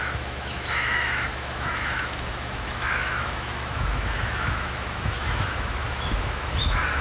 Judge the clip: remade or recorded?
remade